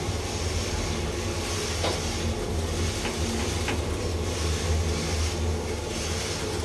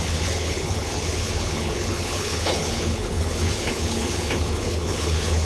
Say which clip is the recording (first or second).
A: first